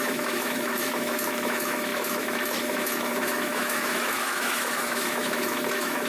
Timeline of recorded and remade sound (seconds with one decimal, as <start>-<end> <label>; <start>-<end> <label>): 0.0-6.1 remade